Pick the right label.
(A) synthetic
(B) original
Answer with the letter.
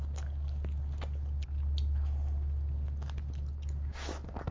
B